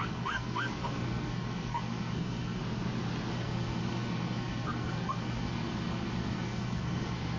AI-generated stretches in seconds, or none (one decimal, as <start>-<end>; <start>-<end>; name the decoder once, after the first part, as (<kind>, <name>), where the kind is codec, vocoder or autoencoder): 0.0-2.6 (codec, SNAC); 3.3-7.4